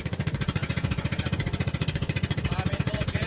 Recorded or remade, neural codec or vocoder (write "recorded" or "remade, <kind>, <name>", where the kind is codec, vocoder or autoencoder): remade, vocoder, Vocos